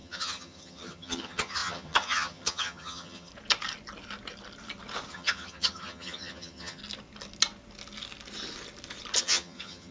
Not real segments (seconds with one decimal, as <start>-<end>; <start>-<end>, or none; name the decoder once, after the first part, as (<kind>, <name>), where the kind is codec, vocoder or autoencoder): 0.0-3.3 (vocoder, HiFi-GAN); 5.1-6.8; 9.2-9.9